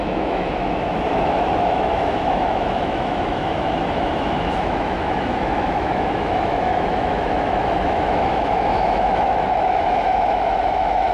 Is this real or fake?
fake